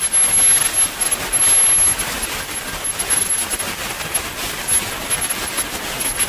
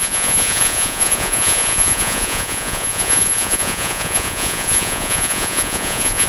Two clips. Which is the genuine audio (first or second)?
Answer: first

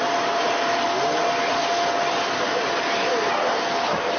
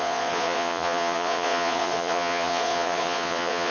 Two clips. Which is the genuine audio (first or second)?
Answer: first